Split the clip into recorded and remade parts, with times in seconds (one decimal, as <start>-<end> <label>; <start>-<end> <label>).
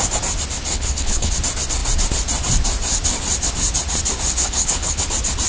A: 0.0-0.7 recorded; 0.7-1.3 remade; 1.3-4.4 recorded; 4.4-5.0 remade; 5.0-5.5 recorded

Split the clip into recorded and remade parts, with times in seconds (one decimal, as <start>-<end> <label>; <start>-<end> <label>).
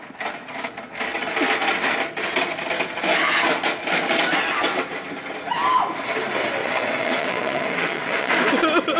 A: 0.0-6.6 recorded; 6.6-8.3 remade; 8.3-9.0 recorded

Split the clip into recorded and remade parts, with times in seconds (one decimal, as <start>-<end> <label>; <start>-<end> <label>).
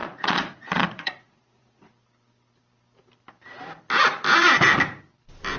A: 0.0-1.9 remade; 1.9-5.6 recorded